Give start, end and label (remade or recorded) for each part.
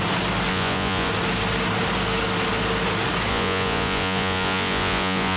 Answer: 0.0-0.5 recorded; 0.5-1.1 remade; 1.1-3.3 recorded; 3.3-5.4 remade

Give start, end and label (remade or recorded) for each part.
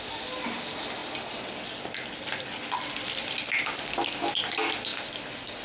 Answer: 0.0-5.6 recorded